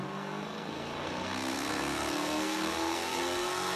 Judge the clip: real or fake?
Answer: fake